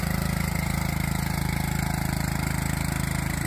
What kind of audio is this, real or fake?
fake